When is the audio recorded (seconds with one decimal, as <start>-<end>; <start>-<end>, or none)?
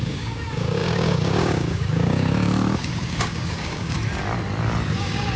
4.0-5.0